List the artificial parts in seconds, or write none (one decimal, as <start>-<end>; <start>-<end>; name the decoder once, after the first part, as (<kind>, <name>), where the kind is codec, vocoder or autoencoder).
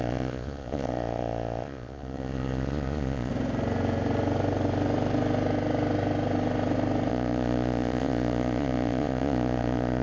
0.0-3.3 (vocoder, Vocos); 7.1-10.0